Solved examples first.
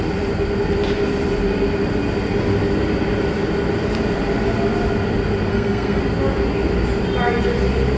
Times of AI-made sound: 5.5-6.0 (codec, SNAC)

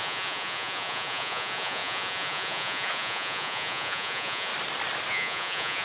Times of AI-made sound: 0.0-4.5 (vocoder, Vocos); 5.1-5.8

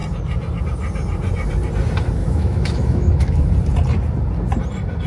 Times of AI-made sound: 2.2-3.5 (autoencoder, DAC-VAE)